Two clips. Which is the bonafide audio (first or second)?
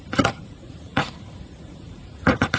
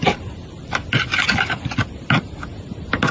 second